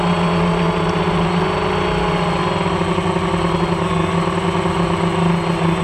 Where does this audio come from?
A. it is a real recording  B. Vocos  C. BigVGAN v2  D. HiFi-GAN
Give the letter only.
A